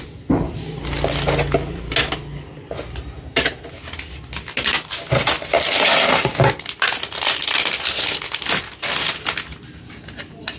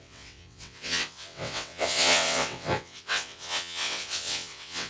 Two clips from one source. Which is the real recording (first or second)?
first